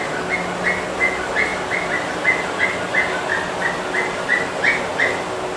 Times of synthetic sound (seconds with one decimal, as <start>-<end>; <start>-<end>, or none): none